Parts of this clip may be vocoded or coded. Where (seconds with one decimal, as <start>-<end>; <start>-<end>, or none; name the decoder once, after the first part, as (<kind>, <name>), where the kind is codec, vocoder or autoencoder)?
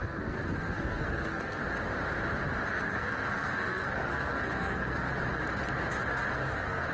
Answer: 0.0-1.6 (codec, SNAC); 2.7-5.1; 6.1-6.9